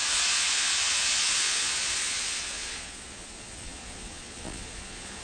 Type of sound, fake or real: fake